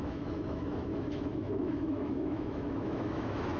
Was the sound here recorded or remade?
remade